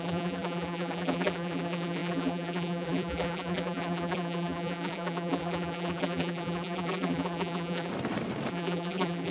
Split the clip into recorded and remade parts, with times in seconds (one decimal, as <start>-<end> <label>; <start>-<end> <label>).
0.0-7.9 remade; 7.9-8.5 recorded; 8.5-9.3 remade